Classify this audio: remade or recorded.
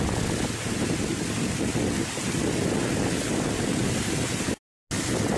recorded